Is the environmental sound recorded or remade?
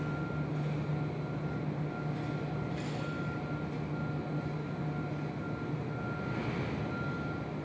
recorded